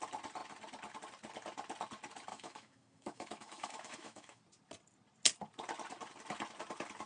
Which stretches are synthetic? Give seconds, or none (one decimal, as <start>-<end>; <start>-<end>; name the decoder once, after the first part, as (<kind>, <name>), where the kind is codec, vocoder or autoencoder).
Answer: 2.3-4.4 (autoencoder, DAC-VAE)